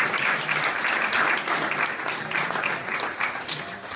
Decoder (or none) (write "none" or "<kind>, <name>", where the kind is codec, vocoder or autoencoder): none